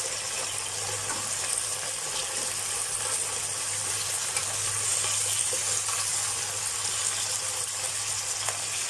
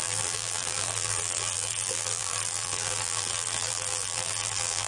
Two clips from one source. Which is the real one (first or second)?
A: first